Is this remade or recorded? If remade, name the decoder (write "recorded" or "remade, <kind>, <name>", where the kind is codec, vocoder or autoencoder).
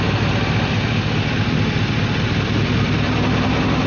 recorded